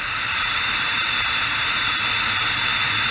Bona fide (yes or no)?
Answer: yes